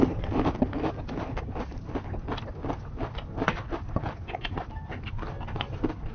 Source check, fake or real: real